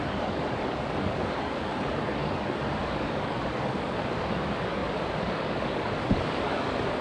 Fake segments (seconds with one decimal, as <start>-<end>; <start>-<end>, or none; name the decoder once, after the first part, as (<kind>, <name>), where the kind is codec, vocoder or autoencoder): 0.0-7.0 (codec, DAC)